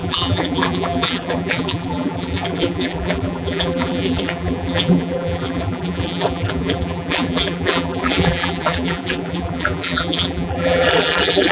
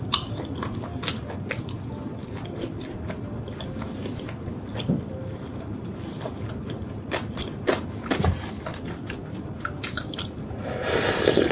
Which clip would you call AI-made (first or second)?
first